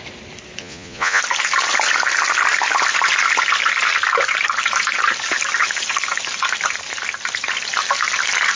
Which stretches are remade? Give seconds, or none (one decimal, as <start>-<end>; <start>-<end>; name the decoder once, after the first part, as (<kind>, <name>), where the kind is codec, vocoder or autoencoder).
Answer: 0.6-1.2 (vocoder, Vocos)